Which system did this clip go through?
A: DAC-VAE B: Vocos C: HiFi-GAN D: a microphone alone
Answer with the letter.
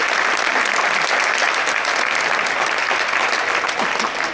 D